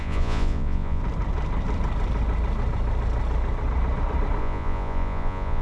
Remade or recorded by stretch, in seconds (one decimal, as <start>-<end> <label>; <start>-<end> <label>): 0.0-1.0 remade; 1.0-4.4 recorded; 4.4-5.6 remade